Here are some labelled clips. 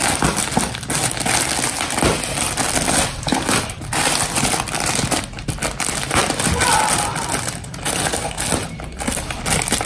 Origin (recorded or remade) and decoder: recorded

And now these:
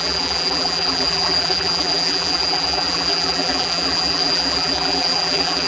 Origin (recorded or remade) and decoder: remade, vocoder, BigVGAN v2